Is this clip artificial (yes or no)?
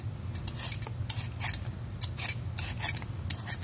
no